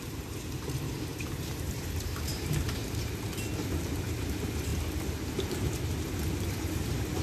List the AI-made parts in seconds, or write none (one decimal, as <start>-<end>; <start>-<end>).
0.0-2.8; 4.0-4.7; 6.1-7.2